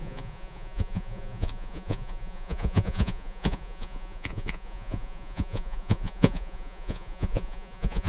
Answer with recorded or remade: remade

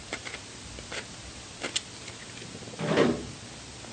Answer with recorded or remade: recorded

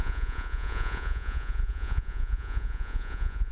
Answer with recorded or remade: remade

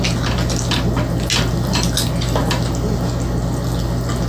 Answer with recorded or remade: recorded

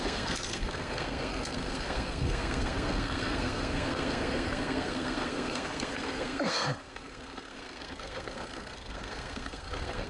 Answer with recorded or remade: remade